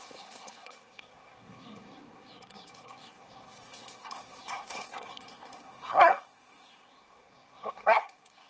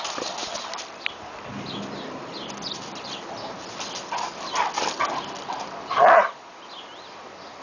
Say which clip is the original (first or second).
second